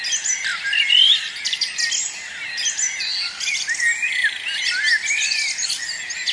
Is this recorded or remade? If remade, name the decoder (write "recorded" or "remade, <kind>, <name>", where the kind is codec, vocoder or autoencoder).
recorded